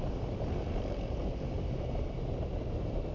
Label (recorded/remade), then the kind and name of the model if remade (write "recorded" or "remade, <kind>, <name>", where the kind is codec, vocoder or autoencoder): recorded